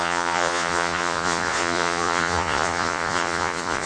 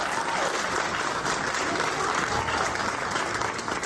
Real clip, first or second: second